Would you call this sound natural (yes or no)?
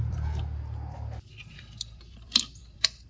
no